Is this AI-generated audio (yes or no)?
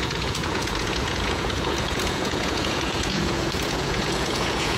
yes